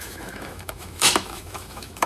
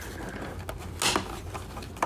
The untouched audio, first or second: second